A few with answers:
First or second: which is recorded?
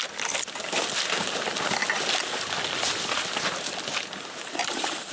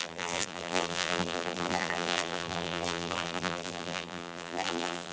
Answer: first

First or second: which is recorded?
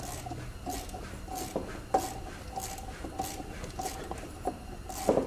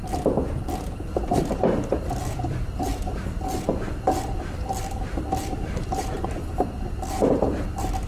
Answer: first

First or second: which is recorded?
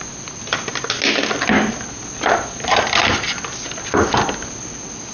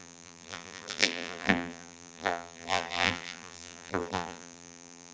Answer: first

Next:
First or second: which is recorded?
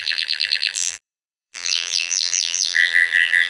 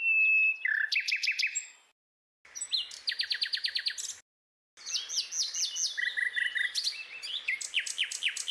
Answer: second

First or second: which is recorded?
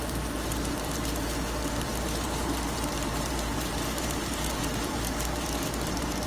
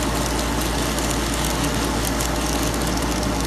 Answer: second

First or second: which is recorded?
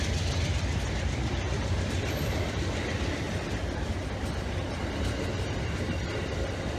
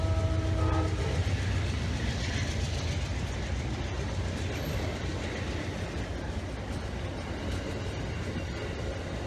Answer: second